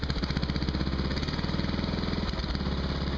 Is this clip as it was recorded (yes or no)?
yes